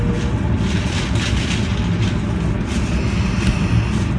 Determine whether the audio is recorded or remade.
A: recorded